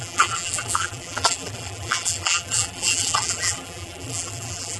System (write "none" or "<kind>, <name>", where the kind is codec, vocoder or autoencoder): vocoder, BigVGAN v2